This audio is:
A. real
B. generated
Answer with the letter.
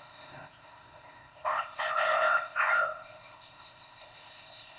B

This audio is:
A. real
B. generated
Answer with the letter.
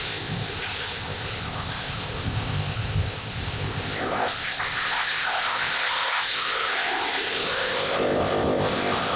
B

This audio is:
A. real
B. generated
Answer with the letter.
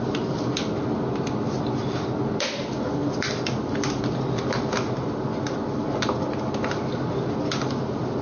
A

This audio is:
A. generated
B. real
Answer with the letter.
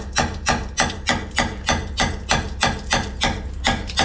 B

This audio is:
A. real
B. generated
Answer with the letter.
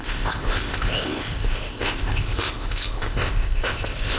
B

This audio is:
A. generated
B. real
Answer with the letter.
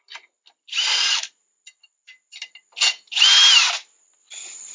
B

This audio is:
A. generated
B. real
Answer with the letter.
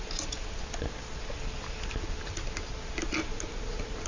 B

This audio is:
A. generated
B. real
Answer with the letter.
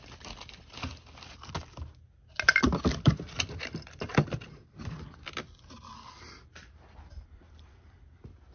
B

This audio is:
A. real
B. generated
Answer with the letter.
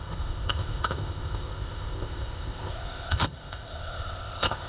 B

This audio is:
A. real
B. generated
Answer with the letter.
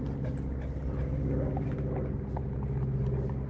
A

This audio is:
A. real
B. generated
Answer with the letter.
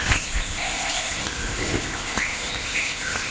B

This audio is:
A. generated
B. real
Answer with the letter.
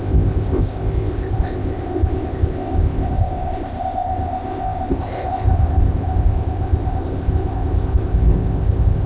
A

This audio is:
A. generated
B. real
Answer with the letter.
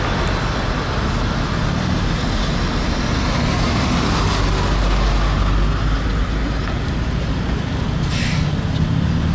B